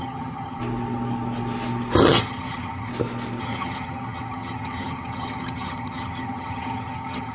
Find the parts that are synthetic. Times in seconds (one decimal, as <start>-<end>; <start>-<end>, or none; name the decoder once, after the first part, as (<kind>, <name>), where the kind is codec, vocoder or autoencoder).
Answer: 0.0-0.6 (vocoder, HiFi-GAN); 2.0-2.9; 3.4-7.3

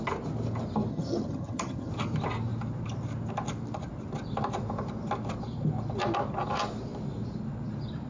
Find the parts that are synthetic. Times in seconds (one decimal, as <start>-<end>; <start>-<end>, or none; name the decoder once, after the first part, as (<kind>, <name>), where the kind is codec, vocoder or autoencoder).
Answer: 0.9-1.9 (vocoder, HiFi-GAN)

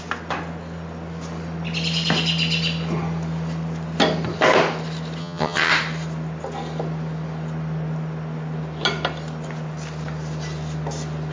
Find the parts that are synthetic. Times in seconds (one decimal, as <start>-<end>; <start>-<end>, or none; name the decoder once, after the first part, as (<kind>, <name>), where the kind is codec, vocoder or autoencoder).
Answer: 5.2-5.7 (vocoder, HiFi-GAN)

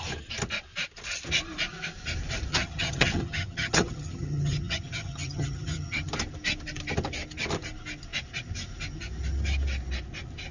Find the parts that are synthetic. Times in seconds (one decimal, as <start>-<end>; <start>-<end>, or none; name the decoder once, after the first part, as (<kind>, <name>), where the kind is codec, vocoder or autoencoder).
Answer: 2.5-6.1 (vocoder, HiFi-GAN)

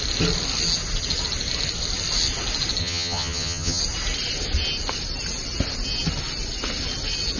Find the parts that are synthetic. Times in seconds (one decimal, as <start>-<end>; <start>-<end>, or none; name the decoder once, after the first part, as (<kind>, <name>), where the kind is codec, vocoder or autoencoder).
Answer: 2.8-3.8 (vocoder, HiFi-GAN)

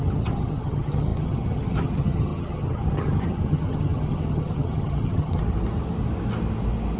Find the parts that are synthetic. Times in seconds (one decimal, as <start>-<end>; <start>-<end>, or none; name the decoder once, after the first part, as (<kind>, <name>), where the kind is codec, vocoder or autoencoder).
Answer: 0.0-5.4 (vocoder, HiFi-GAN)

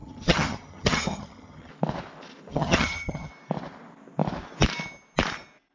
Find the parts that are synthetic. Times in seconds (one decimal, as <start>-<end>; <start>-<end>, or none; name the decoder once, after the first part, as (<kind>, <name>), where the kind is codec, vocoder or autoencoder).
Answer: 0.0-1.7 (vocoder, HiFi-GAN); 2.5-3.3

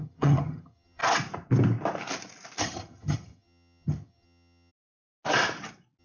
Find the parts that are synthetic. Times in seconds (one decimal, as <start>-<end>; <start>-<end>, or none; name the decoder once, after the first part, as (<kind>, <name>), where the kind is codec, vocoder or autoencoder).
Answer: 0.0-1.0 (vocoder, HiFi-GAN); 2.6-4.7